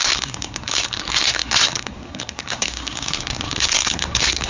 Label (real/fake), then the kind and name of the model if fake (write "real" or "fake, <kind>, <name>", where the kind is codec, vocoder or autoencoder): fake, codec, SNAC